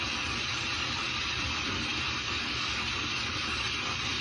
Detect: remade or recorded remade